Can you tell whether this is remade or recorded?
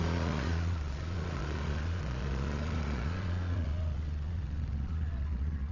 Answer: remade